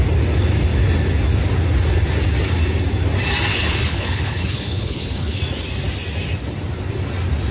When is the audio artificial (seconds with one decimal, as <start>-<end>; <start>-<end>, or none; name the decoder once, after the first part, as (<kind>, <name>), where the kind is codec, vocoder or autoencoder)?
3.5-5.4 (codec, HILCodec)